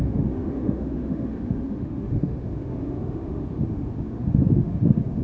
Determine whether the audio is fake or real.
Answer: fake